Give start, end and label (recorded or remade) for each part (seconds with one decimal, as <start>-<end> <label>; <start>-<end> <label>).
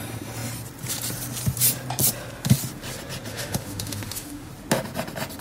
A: 0.0-3.3 recorded; 3.3-4.5 remade; 4.5-5.4 recorded